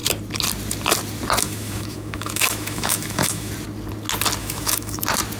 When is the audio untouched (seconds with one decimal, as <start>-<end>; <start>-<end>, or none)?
0.0-1.4; 3.5-4.4; 5.0-5.4